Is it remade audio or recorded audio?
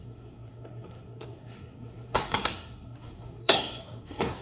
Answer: remade